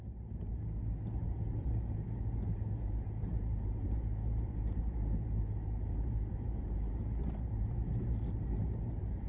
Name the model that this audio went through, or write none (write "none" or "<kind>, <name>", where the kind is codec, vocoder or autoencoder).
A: vocoder, BigVGAN v2